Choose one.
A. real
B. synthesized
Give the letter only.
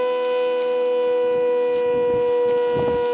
A